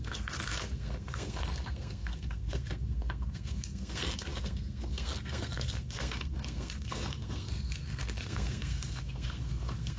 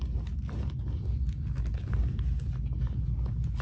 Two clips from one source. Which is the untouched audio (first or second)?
second